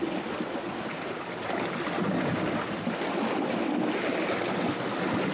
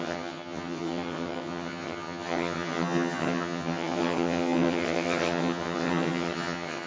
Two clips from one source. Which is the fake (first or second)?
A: second